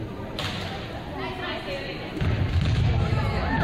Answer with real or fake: real